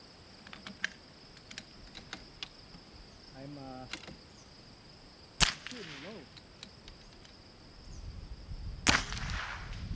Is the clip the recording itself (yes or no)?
yes